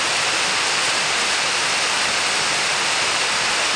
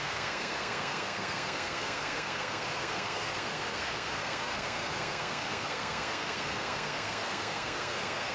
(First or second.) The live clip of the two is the first